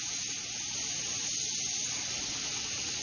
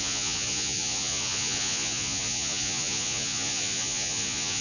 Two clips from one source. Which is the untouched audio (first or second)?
first